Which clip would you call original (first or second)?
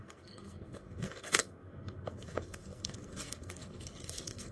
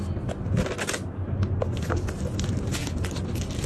second